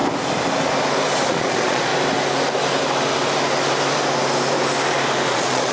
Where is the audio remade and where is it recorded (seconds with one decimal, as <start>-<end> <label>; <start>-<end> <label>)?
0.0-1.3 recorded; 1.3-1.9 remade; 1.9-5.3 recorded; 5.3-5.7 remade